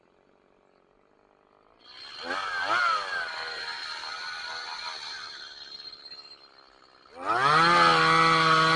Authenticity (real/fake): real